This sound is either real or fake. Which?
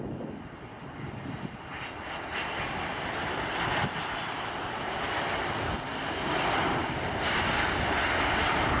fake